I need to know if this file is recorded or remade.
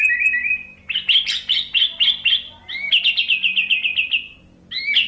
recorded